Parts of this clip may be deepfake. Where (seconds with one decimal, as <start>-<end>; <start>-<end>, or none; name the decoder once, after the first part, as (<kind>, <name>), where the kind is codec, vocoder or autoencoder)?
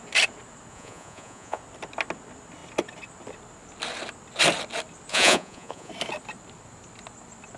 0.7-1.6 (vocoder, Vocos); 5.1-5.9